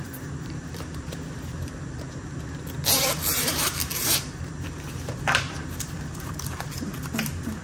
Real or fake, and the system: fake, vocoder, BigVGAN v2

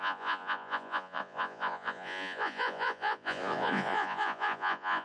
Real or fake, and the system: fake, vocoder, Vocos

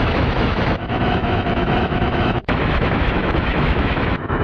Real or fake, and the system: fake, autoencoder, DAC-VAE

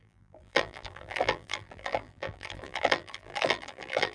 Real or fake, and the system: fake, vocoder, BigVGAN v2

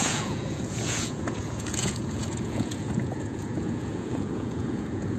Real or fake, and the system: fake, vocoder, Vocos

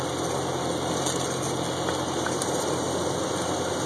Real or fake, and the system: real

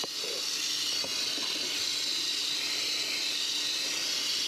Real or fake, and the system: real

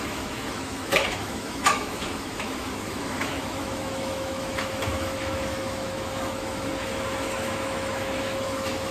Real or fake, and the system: fake, autoencoder, DAC-VAE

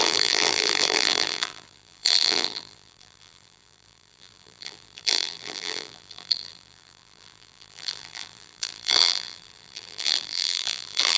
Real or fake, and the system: fake, vocoder, BigVGAN v2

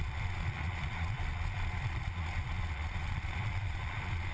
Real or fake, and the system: fake, vocoder, Vocos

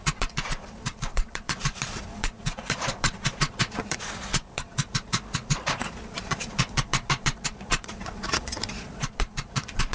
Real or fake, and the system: fake, vocoder, Vocos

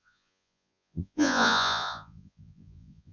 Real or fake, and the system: fake, vocoder, Vocos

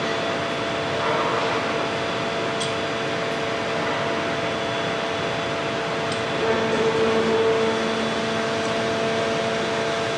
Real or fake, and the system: real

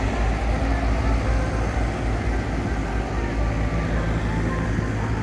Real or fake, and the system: real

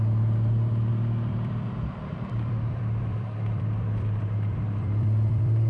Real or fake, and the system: fake, vocoder, BigVGAN v2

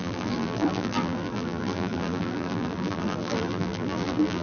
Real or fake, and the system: fake, vocoder, BigVGAN v2